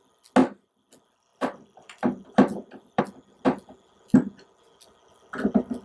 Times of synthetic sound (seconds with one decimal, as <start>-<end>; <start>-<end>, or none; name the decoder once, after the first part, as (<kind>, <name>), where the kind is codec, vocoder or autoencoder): 0.4-0.9 (vocoder, BigVGAN v2); 1.3-3.0

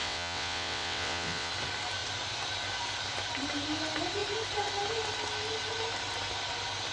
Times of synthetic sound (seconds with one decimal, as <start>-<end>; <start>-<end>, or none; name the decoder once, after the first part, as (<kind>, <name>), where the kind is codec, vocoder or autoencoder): 0.0-1.5 (vocoder, WaveNeXt)

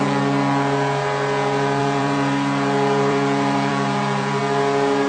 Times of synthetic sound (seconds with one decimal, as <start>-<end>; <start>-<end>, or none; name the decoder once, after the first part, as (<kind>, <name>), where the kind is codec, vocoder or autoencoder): 1.8-4.4 (vocoder, BigVGAN v2)

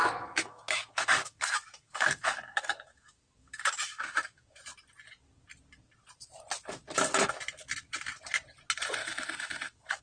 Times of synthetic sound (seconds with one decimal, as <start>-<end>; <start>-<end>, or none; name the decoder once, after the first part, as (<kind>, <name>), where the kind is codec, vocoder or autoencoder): 0.0-4.6 (autoencoder, DAC-VAE); 9.0-10.0

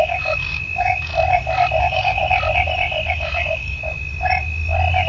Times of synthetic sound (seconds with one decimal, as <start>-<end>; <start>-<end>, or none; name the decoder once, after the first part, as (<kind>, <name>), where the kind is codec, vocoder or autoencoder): 0.0-1.1 (codec, DAC); 1.8-2.2; 3.1-3.8

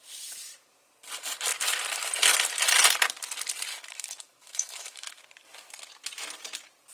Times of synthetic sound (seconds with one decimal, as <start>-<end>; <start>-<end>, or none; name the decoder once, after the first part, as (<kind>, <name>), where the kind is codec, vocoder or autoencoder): 3.7-5.2 (autoencoder, DAC-VAE)

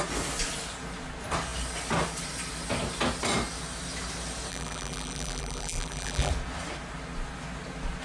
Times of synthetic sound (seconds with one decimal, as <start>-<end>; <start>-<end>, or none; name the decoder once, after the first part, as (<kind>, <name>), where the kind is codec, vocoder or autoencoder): 4.5-6.3 (vocoder, BigVGAN v2)

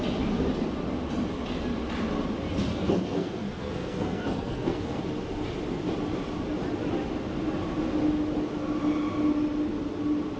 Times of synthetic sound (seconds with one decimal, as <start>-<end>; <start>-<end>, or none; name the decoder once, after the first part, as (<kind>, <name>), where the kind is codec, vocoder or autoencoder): 2.7-5.0 (codec, SNAC)